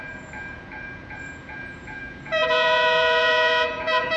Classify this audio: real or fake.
fake